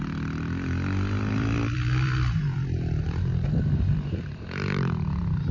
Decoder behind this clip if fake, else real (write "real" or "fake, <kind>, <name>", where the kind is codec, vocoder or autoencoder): fake, vocoder, BigVGAN v2